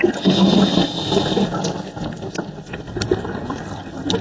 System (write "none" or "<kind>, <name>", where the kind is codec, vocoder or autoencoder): none